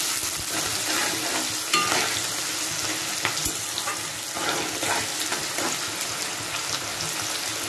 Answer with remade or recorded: recorded